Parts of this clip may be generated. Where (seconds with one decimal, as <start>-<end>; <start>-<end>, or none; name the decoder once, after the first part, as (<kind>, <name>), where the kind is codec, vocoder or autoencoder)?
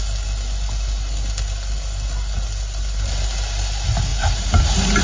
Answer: 4.1-5.0 (vocoder, BigVGAN v2)